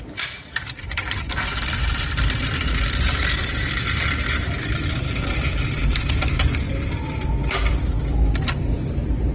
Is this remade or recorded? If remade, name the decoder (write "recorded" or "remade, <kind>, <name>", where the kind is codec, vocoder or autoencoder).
remade, vocoder, BigVGAN v2